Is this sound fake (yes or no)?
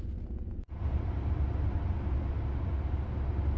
no